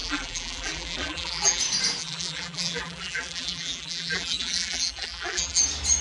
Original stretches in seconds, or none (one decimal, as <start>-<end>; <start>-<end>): 1.6-2.0; 5.6-6.0